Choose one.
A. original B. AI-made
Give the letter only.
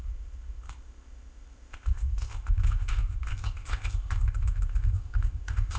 B